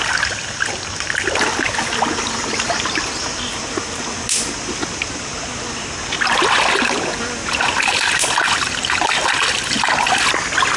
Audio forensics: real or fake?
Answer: real